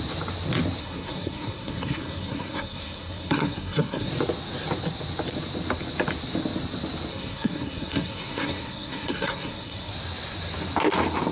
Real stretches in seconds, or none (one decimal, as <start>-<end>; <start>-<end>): 0.0-0.8; 4.1-7.1; 9.9-11.3